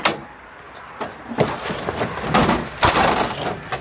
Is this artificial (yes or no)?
no